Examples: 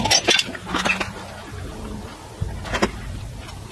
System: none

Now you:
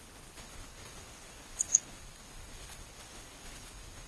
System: codec, HILCodec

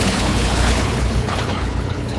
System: codec, HILCodec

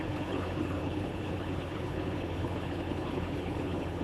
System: codec, HILCodec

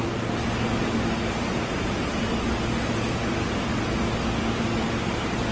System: none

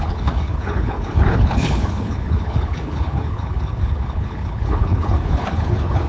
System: codec, HILCodec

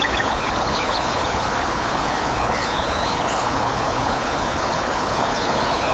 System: codec, HILCodec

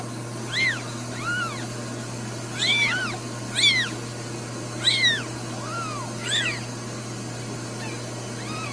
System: none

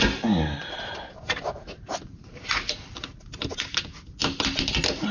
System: none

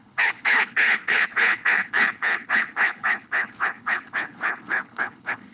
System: codec, HILCodec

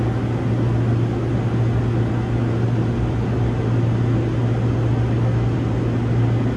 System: none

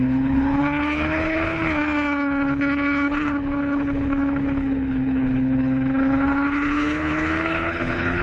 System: codec, HILCodec